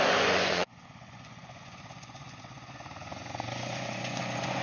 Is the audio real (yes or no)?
no